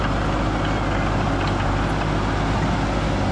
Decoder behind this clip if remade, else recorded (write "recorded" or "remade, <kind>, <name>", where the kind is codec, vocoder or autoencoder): recorded